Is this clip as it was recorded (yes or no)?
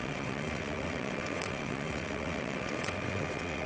no